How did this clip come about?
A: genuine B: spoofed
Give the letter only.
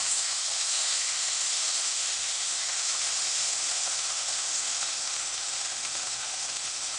B